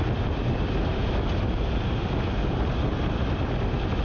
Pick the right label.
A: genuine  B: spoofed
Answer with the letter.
A